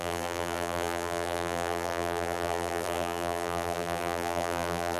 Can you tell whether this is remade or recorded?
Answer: remade